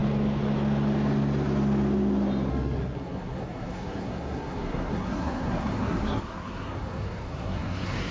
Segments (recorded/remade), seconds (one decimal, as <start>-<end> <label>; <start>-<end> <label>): 0.0-2.5 recorded; 2.5-8.1 remade